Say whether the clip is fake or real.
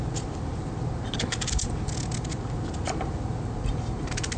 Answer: real